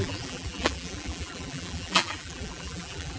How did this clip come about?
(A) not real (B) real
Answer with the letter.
A